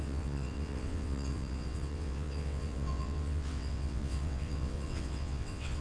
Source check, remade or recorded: remade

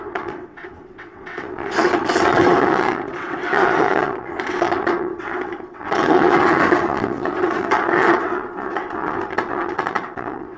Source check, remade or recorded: remade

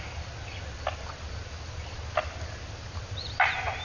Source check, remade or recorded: recorded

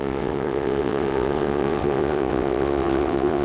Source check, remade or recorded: remade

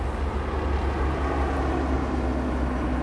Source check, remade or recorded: recorded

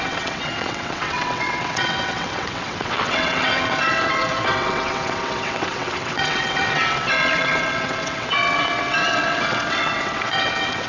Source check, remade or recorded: remade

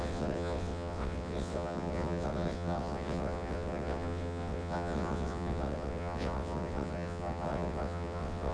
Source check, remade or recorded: remade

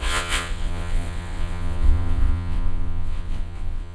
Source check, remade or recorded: remade